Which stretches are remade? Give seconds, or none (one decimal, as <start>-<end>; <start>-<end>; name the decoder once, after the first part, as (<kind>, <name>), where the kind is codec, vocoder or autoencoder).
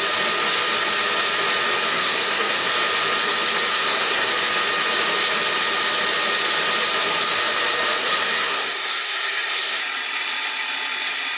1.9-2.7 (codec, SNAC); 3.7-4.3; 8.0-9.8